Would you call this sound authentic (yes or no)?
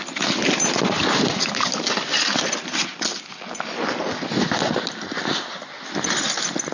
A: yes